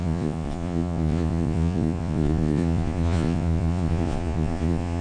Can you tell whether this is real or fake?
fake